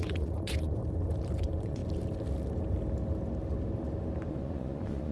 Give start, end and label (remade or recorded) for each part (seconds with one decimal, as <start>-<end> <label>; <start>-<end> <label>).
0.0-0.8 remade; 0.8-1.4 recorded; 1.4-1.8 remade; 1.8-4.3 recorded; 4.3-5.1 remade